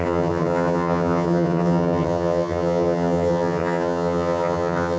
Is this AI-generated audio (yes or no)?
yes